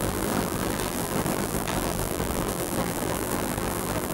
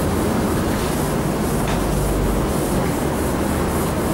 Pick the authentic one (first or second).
second